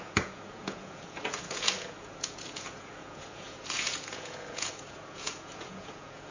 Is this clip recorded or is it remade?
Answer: remade